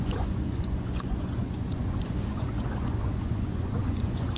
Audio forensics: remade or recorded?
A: remade